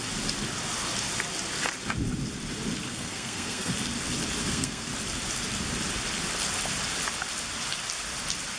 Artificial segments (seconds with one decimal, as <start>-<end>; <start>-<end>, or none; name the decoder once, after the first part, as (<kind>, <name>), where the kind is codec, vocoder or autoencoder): 2.9-3.7 (codec, SNAC); 4.4-4.9